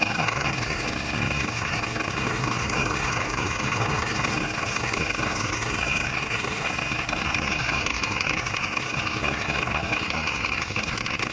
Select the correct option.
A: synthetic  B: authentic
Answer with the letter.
A